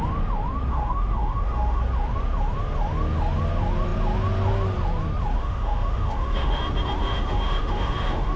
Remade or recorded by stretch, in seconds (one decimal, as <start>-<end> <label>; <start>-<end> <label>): 0.0-0.7 recorded; 0.7-1.8 remade; 1.8-5.4 recorded; 5.4-6.6 remade; 6.6-7.0 recorded; 7.0-8.4 remade